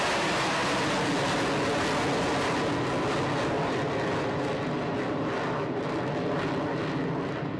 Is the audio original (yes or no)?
yes